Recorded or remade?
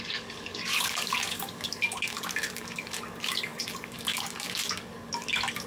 remade